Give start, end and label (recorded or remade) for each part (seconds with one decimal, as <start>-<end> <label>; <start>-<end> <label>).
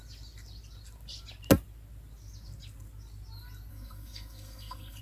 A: 0.0-3.7 recorded; 3.7-5.0 remade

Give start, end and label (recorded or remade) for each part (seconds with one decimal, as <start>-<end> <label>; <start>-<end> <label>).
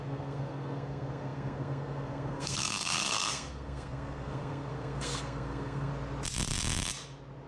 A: 0.0-5.9 remade; 5.9-7.5 recorded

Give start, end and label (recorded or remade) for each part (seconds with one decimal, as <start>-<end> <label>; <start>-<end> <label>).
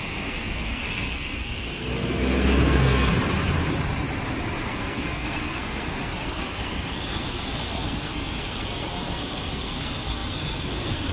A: 0.0-3.1 remade; 3.1-4.6 recorded; 4.6-11.1 remade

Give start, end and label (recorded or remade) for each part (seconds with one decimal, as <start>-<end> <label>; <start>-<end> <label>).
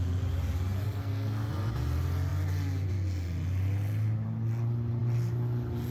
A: 0.0-1.0 recorded; 1.0-1.5 remade; 1.5-5.9 recorded